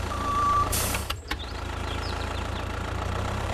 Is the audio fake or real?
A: fake